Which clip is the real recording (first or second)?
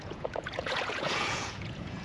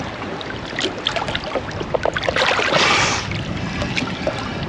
second